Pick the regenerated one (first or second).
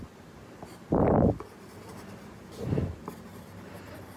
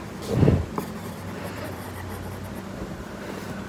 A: first